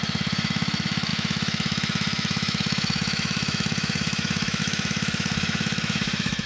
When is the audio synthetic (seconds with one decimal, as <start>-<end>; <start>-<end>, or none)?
0.0-6.5